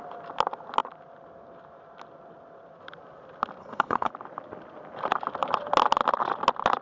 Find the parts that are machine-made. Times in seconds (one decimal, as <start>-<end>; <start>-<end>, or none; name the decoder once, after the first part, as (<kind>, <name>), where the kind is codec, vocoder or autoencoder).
3.6-4.1 (codec, HILCodec)